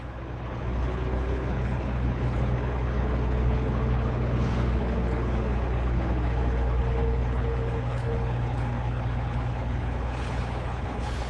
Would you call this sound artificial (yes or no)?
yes